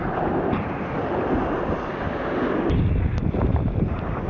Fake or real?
real